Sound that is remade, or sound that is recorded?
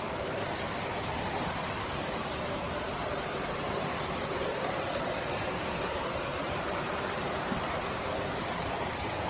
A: remade